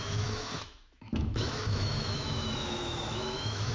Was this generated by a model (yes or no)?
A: yes